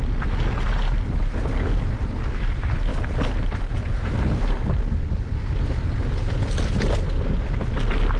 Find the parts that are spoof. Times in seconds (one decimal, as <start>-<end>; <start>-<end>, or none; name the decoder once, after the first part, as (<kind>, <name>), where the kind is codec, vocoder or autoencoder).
none